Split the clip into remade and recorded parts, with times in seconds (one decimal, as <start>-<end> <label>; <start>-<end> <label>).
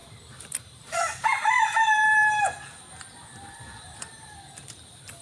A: 0.0-2.4 remade; 2.4-5.2 recorded